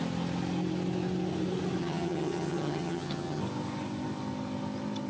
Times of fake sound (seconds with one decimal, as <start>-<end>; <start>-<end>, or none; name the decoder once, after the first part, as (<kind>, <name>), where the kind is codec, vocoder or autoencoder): 1.8-3.4 (vocoder, HiFi-GAN)

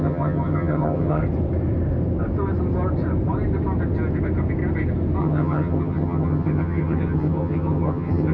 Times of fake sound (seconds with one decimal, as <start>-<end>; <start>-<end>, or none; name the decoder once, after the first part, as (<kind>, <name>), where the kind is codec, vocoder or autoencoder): 0.0-1.2 (vocoder, HiFi-GAN); 5.2-8.3

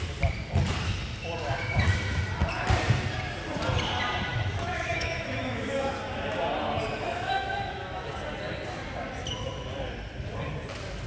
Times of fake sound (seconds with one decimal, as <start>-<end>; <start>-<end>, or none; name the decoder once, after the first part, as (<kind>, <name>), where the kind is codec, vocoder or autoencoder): 4.3-5.9 (autoencoder, DAC-VAE); 6.9-8.1

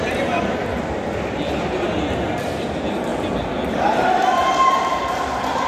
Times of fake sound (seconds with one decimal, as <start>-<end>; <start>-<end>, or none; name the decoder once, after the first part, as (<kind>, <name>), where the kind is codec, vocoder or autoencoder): 0.0-0.7 (vocoder, BigVGAN v2); 2.4-3.1; 3.7-5.7